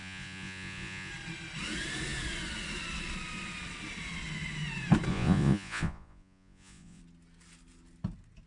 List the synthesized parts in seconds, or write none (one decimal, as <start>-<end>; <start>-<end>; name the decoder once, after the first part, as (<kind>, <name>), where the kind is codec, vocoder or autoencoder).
0.0-1.1 (vocoder, Vocos); 5.1-7.0